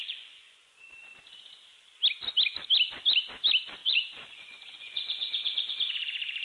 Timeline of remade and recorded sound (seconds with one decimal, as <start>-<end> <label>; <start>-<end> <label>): 0.0-0.9 remade; 0.9-3.8 recorded; 3.8-5.7 remade; 5.7-6.4 recorded